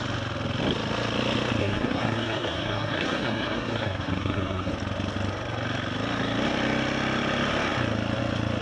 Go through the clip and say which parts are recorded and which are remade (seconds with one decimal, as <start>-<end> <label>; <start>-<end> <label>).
0.0-1.6 recorded; 1.6-4.7 remade; 4.7-8.6 recorded